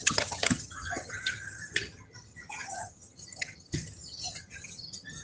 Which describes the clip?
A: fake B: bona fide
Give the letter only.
A